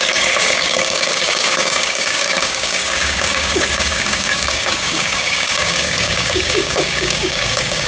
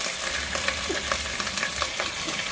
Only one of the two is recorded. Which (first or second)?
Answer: second